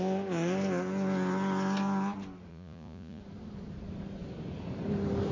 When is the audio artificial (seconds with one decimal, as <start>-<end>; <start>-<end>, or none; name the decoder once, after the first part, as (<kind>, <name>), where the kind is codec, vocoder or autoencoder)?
2.5-3.2 (vocoder, Vocos)